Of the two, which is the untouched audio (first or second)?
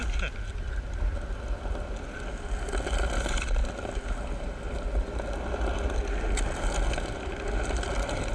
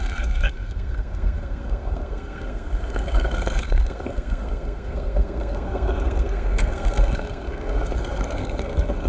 first